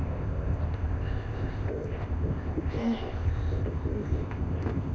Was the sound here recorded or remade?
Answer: remade